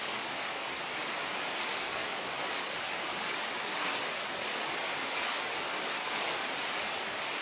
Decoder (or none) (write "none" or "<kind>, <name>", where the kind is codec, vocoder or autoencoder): codec, DAC